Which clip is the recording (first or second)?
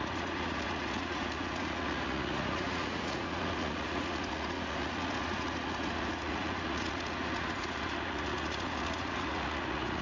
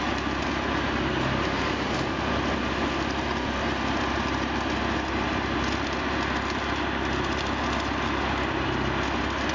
second